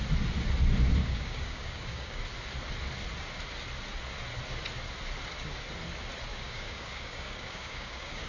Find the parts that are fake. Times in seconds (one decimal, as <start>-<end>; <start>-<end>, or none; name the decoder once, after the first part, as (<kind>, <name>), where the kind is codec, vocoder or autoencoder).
1.0-2.2 (codec, DAC); 6.3-8.3